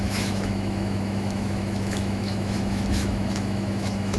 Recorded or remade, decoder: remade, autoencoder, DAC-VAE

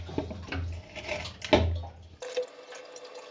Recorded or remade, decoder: recorded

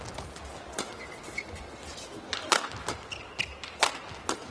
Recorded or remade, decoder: recorded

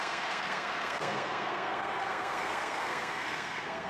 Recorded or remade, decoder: remade, codec, SNAC